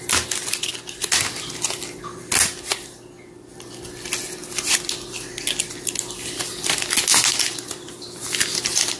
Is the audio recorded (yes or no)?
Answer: yes